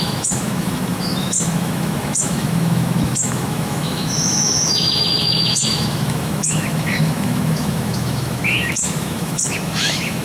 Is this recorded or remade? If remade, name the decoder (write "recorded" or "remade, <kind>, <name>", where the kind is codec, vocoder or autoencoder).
remade, autoencoder, DAC-VAE